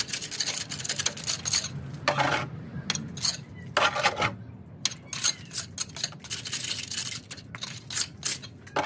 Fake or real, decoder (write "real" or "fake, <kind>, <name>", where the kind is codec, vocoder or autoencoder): real